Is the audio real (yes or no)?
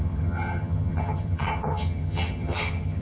no